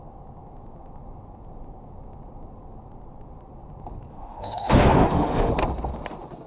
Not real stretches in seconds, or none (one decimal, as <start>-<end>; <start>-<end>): 4.1-5.5